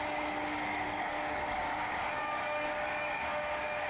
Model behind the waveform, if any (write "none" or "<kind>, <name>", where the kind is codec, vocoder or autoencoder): codec, DAC